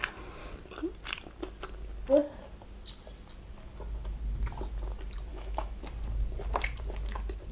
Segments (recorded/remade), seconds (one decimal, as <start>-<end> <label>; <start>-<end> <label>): 0.0-5.3 recorded; 5.3-5.8 remade; 5.8-7.5 recorded